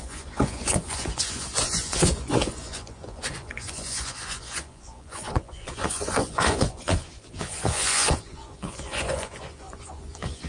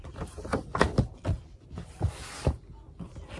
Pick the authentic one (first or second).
second